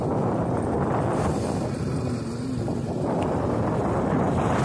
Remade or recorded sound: recorded